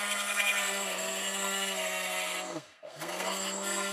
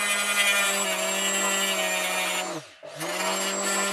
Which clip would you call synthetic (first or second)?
first